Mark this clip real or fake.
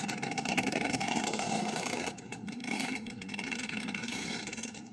fake